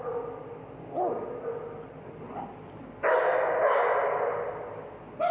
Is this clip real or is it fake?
real